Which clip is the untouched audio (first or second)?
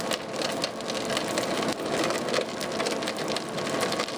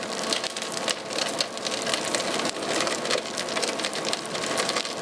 first